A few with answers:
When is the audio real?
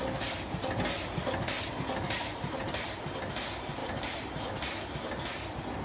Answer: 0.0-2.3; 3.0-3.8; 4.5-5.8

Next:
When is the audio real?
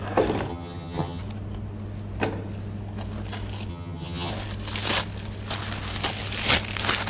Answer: 0.0-0.5; 1.2-3.7; 4.3-7.1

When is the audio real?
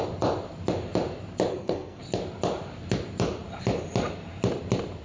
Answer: 0.0-1.5; 2.0-5.0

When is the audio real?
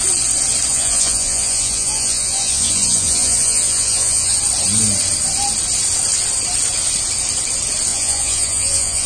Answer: 0.0-0.7; 4.4-7.9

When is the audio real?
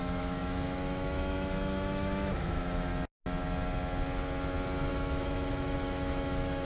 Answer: 2.9-4.9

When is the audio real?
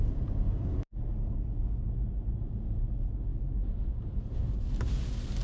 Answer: 0.0-1.2; 1.9-5.4